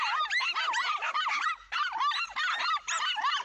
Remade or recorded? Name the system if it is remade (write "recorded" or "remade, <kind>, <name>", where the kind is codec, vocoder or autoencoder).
recorded